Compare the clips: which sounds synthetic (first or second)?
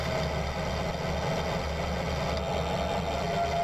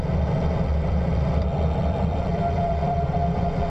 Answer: second